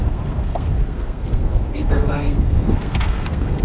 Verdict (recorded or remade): remade